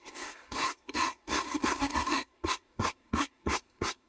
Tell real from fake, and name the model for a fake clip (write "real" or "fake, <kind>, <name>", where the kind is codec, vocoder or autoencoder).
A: fake, codec, SNAC